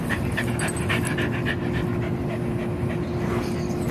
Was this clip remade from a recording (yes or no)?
no